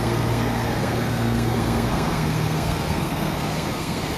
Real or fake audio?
fake